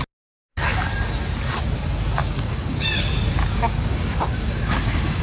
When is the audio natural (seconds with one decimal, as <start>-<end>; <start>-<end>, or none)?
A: 0.0-2.2; 2.8-3.4

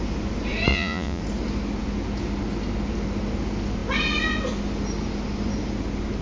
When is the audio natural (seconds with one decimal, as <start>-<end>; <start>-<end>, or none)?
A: 0.0-0.7; 1.2-6.2

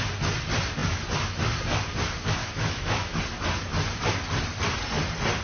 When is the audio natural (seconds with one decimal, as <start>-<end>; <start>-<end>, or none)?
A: 0.0-2.4; 3.2-5.4

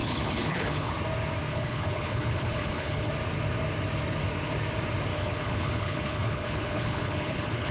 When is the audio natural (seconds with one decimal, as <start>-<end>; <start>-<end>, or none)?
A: 0.9-1.5; 3.1-5.1

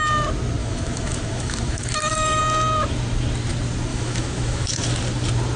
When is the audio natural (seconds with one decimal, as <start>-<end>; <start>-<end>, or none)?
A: 0.0-0.6; 2.4-3.9; 4.9-5.6

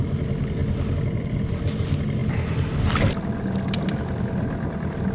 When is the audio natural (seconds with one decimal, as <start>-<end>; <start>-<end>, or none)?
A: 0.0-5.1

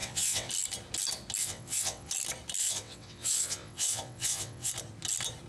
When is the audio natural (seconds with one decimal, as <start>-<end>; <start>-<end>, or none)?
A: 0.5-1.4; 2.1-2.6; 4.7-5.5

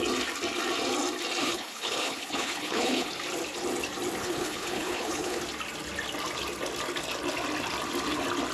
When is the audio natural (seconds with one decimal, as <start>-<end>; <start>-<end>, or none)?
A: 0.0-1.4; 3.1-4.2; 5.4-8.5